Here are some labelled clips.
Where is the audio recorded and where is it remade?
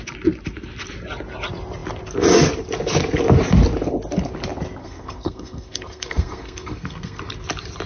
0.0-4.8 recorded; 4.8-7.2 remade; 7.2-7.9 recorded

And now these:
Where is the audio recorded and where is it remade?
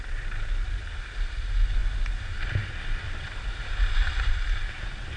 0.0-5.2 recorded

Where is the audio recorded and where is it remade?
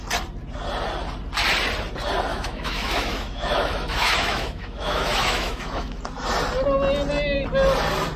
0.0-2.3 recorded; 2.3-6.0 remade; 6.0-8.2 recorded